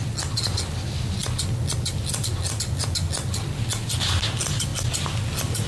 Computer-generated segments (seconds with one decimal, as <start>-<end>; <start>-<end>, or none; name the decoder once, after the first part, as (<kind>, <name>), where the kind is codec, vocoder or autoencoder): none